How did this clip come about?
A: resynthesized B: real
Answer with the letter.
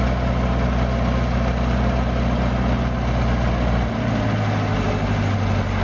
B